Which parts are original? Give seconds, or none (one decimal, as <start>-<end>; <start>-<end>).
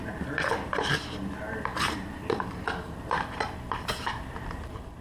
0.0-1.7